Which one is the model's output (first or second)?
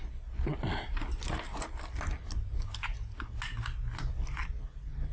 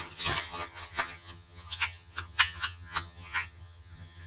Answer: second